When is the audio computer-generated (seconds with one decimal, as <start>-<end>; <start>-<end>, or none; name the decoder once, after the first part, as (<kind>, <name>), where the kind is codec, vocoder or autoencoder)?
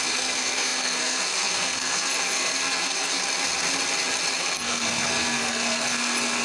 0.0-3.2 (codec, SNAC); 4.4-6.4